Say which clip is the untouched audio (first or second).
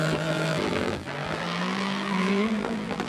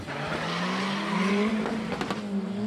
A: second